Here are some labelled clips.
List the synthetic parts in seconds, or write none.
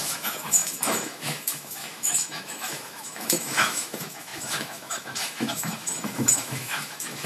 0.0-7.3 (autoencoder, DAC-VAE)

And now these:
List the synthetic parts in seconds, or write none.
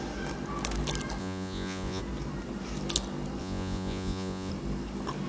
1.2-2.0 (vocoder, Vocos); 3.4-4.5